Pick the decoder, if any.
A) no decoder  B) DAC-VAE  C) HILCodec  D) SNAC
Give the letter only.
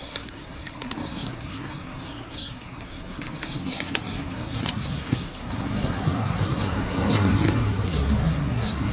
D